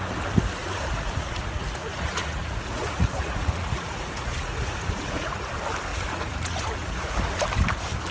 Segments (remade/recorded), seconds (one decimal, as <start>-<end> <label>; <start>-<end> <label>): 0.0-0.6 recorded; 0.6-5.5 remade; 5.5-5.9 recorded; 5.9-7.2 remade; 7.2-8.1 recorded